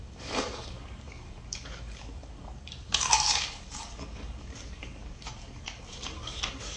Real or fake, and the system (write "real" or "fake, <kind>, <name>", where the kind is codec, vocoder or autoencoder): fake, codec, DAC